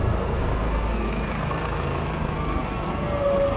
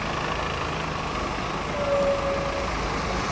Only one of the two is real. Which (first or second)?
second